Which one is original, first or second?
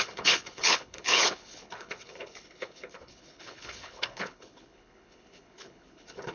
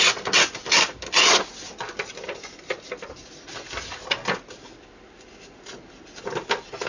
second